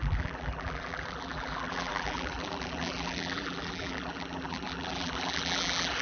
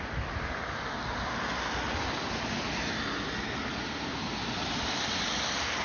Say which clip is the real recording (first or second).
second